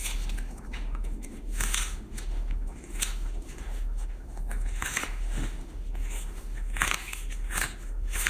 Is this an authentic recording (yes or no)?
no